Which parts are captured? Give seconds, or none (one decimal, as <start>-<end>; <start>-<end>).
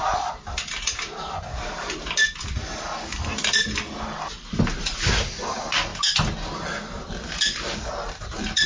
0.0-8.7